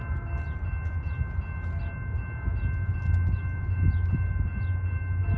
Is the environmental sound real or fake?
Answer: real